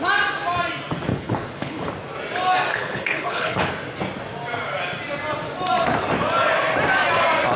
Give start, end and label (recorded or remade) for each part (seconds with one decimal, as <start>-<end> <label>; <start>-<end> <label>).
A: 0.0-1.1 recorded; 1.1-1.9 remade; 1.9-2.7 recorded; 2.7-3.7 remade; 3.7-7.6 recorded